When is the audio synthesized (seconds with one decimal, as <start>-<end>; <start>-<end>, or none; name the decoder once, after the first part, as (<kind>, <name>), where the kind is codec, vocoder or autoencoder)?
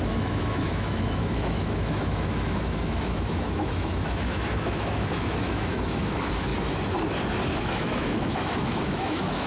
0.0-6.5 (autoencoder, DAC-VAE); 7.6-9.5